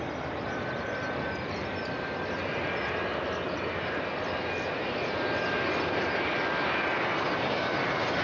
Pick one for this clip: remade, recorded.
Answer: recorded